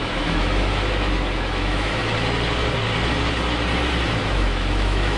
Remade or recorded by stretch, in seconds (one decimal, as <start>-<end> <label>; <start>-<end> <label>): 0.0-2.0 remade; 2.0-4.2 recorded; 4.2-5.2 remade

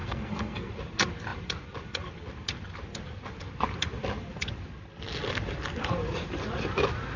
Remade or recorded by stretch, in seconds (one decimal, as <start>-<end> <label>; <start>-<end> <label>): 0.0-0.7 remade; 0.7-7.2 recorded

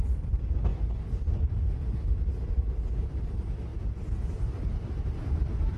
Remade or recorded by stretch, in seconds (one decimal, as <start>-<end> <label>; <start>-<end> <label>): 0.0-5.8 recorded

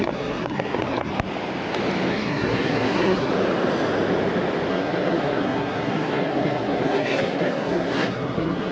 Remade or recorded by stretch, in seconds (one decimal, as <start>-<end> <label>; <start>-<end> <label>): 0.0-1.1 remade; 1.1-2.1 recorded; 2.1-3.3 remade; 3.3-4.7 recorded; 4.7-8.7 remade